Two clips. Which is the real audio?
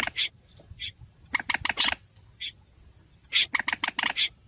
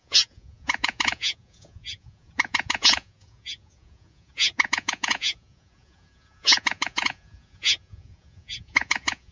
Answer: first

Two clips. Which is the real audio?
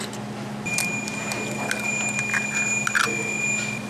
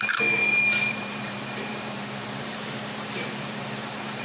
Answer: first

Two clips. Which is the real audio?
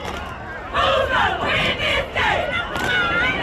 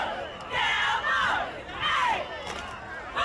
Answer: second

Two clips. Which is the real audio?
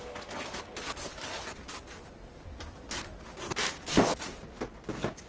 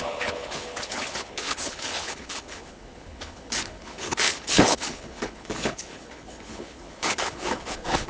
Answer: first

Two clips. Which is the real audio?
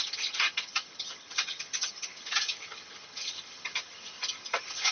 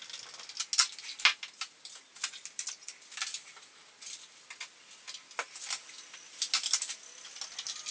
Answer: second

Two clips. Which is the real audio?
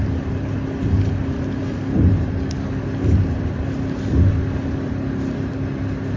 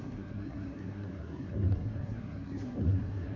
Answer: first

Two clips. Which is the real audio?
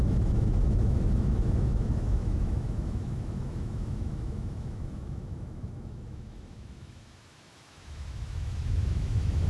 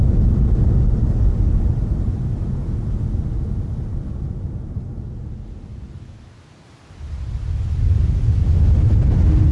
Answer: second